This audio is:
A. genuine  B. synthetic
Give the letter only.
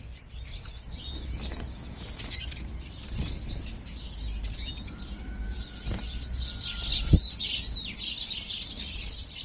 A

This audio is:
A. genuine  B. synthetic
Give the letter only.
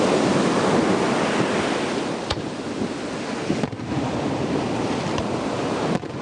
A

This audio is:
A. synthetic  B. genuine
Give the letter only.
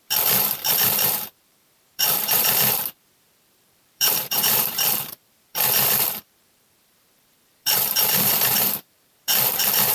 A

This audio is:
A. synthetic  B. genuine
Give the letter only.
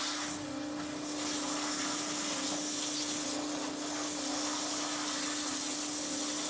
B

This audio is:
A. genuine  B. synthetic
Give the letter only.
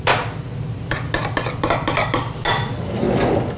A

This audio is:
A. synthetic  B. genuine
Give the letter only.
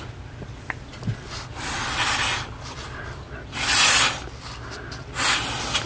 B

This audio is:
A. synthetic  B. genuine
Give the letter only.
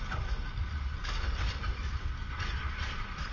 B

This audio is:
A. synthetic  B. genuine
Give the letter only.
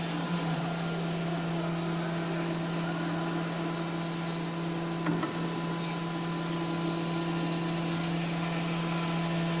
B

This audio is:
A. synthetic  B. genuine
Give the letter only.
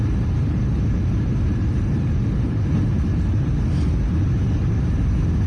A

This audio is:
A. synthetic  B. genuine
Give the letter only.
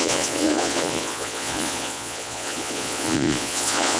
A